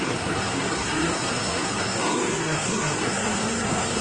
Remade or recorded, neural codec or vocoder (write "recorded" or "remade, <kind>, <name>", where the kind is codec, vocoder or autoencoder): remade, codec, SNAC